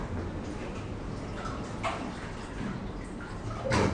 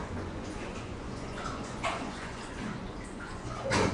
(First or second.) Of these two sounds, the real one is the first